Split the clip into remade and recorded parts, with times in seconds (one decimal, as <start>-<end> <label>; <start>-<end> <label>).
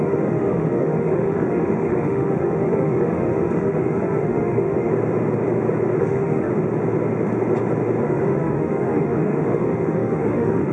0.0-4.9 remade; 4.9-6.0 recorded; 6.0-6.5 remade; 6.5-8.0 recorded; 8.0-10.7 remade